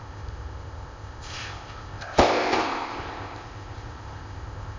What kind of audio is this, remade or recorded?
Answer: remade